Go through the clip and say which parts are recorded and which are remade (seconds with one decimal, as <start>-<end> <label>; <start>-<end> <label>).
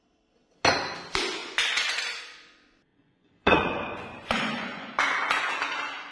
0.0-1.4 recorded; 1.4-2.0 remade; 2.0-2.9 recorded; 2.9-5.5 remade; 5.5-6.1 recorded